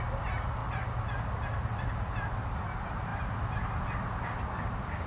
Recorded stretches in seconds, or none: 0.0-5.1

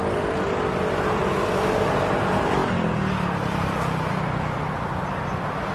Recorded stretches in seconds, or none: 0.0-5.7

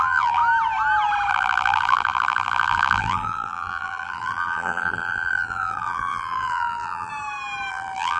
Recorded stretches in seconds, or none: 0.4-1.3; 7.1-7.7

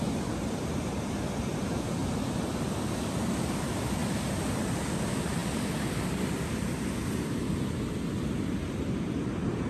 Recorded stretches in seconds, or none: 0.0-9.7

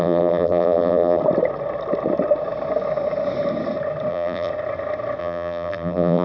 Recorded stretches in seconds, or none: 1.2-4.1; 4.5-5.2